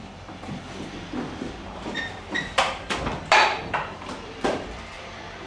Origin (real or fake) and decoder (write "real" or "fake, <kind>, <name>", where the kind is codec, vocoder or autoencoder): fake, vocoder, BigVGAN v2